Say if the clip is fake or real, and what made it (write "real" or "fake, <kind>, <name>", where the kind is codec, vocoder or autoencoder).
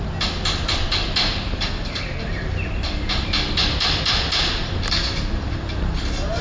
real